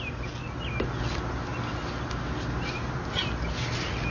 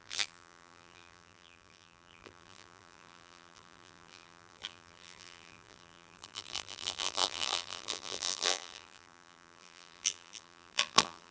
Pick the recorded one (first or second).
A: first